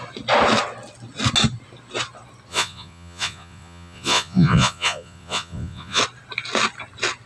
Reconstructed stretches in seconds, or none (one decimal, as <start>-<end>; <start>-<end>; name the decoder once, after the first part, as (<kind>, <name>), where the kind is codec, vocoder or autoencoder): 2.5-6.0 (vocoder, Vocos)